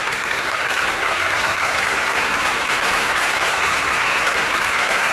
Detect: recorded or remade remade